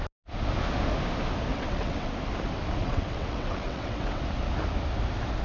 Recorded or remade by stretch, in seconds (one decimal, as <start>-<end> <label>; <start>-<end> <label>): 0.0-1.5 recorded; 1.5-2.1 remade; 2.1-2.8 recorded; 2.8-4.2 remade; 4.2-5.4 recorded